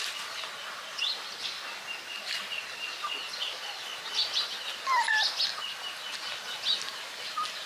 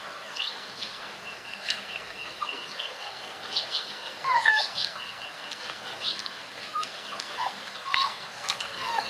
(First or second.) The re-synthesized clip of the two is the second